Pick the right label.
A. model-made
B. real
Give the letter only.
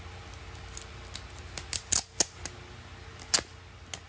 B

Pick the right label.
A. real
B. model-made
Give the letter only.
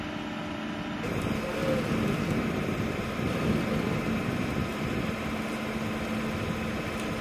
A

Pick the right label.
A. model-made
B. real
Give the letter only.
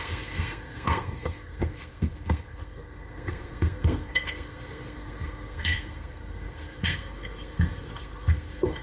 A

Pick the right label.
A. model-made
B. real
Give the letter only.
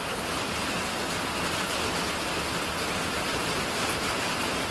B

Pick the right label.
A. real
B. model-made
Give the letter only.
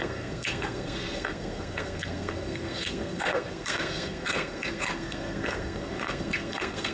B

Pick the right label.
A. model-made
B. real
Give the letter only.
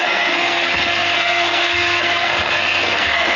A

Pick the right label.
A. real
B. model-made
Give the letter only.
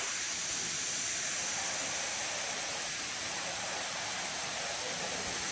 A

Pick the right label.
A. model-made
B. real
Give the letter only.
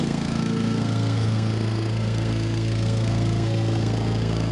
A